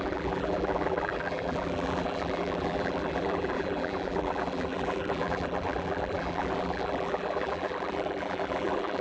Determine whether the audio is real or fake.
fake